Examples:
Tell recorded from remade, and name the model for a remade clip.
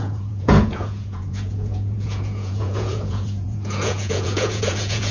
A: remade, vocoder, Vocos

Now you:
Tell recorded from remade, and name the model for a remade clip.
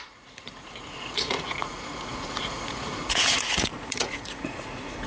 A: remade, vocoder, Vocos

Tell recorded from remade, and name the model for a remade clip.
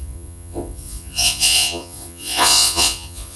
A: remade, vocoder, Vocos